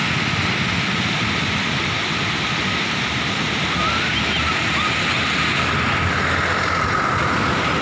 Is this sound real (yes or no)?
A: yes